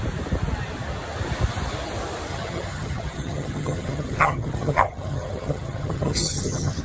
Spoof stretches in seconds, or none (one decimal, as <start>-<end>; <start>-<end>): 2.3-6.8